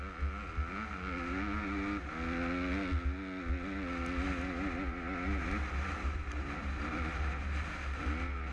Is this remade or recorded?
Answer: recorded